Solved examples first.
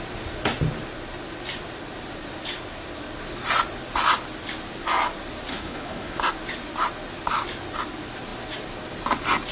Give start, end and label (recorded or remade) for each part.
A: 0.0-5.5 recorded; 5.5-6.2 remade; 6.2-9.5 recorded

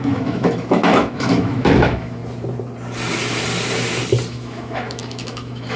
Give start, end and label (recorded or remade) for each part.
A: 0.0-2.2 remade; 2.2-4.3 recorded; 4.3-5.8 remade